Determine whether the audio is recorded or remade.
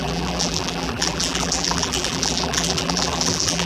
remade